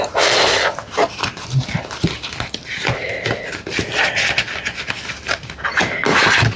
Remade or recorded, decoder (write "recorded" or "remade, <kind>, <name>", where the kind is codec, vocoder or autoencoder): recorded